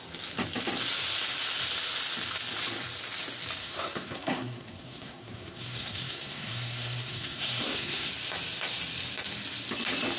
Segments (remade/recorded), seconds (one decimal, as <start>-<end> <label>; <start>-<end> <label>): 0.0-3.6 recorded; 3.6-8.1 remade; 8.1-10.2 recorded